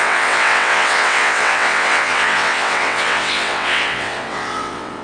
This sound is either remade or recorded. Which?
remade